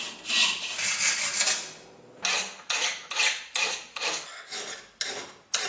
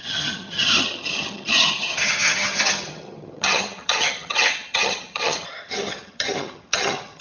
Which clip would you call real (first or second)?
first